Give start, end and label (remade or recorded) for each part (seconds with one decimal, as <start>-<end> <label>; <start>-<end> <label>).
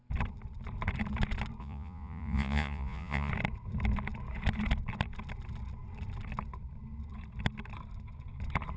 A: 0.0-1.6 recorded; 1.6-3.3 remade; 3.3-8.8 recorded